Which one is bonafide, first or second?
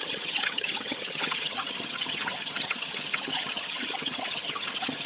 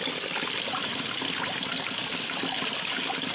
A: second